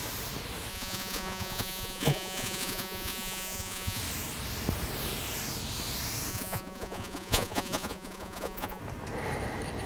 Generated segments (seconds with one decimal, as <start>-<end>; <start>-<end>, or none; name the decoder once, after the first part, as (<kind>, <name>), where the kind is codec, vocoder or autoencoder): 0.7-4.0 (vocoder, Vocos); 6.3-8.8